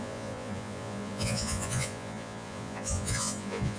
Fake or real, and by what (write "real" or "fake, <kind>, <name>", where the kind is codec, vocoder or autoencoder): fake, vocoder, Vocos